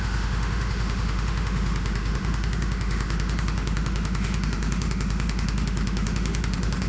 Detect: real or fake fake